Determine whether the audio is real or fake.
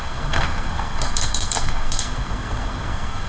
fake